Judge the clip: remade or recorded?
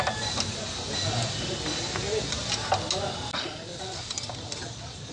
recorded